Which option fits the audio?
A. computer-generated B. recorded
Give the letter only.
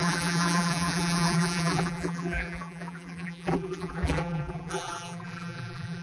A